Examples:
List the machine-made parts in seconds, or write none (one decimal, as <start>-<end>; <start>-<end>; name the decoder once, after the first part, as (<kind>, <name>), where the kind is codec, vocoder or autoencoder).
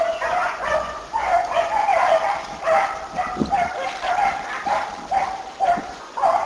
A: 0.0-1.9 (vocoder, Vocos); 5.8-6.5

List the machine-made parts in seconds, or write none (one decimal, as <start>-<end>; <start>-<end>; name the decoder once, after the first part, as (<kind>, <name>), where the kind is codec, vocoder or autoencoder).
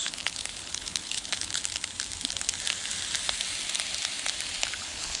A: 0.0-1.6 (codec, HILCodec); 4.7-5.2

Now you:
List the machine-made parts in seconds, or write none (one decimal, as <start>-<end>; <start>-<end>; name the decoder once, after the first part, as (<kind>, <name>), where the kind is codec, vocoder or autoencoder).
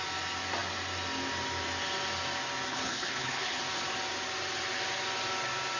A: 2.7-3.6 (codec, HILCodec)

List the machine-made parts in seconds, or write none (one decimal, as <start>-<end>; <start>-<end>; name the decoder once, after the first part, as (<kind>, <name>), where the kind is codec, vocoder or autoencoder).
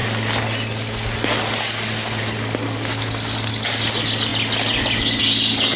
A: none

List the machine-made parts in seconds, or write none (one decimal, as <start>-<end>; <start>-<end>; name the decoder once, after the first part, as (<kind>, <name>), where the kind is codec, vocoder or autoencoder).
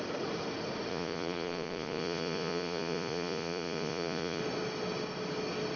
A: 0.9-4.4 (vocoder, Vocos)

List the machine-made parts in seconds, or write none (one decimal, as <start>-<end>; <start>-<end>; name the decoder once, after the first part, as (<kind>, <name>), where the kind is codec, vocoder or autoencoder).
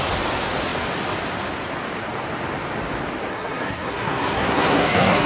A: 3.3-5.3 (codec, SNAC)